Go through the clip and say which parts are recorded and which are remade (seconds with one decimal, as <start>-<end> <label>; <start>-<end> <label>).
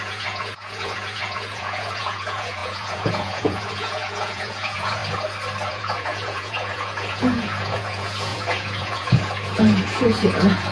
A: 0.0-5.0 remade; 5.0-5.7 recorded; 5.7-10.7 remade